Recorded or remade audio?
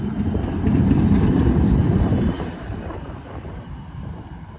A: remade